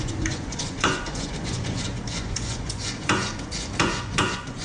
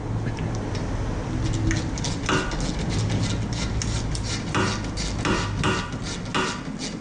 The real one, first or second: second